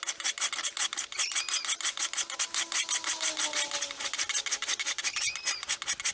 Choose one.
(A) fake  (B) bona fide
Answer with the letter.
B